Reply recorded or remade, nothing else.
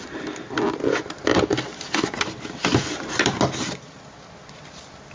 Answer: recorded